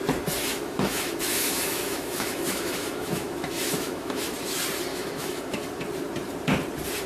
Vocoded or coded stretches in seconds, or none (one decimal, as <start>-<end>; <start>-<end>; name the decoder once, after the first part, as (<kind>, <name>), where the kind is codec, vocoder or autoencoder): 0.4-4.3 (autoencoder, DAC-VAE); 4.9-5.6